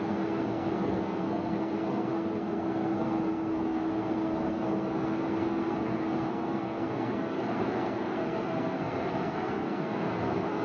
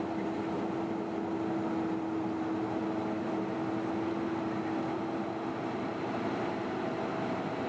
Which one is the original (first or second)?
second